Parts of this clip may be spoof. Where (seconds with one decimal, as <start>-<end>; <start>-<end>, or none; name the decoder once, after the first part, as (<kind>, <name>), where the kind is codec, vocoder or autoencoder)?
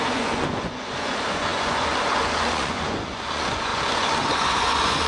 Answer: 0.0-5.1 (vocoder, Vocos)